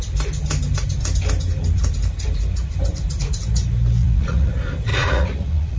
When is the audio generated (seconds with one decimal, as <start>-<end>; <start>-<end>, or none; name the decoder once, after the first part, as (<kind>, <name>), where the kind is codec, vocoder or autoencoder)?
4.0-4.5 (vocoder, Vocos); 4.9-5.8